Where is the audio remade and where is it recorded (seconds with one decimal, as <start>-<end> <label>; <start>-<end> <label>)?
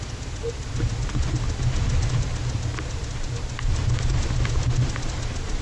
0.0-5.6 recorded